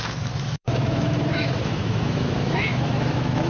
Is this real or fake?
fake